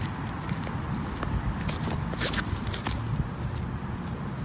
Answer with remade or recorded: recorded